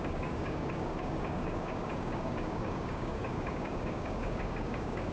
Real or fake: fake